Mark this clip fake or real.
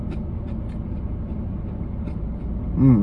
real